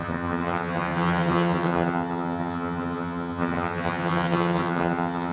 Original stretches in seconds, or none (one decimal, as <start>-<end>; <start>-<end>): none